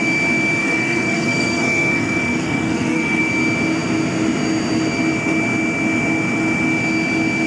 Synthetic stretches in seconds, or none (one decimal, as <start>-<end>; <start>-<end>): 0.6-3.2